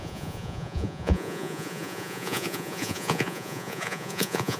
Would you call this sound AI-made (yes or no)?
yes